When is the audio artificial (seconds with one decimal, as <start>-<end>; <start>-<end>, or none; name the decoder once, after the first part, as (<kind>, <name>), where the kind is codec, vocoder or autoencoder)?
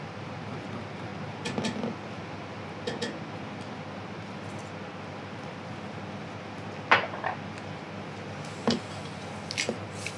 none